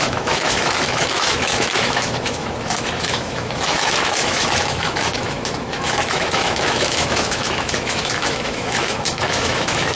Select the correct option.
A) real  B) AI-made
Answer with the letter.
B